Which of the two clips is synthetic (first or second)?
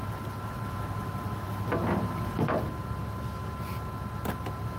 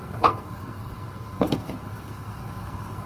second